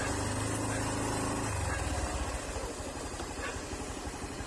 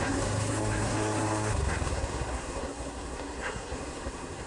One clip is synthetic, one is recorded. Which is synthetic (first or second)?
second